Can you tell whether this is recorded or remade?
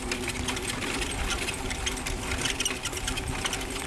recorded